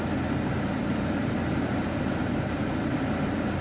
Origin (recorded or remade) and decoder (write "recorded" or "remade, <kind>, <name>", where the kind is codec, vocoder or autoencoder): recorded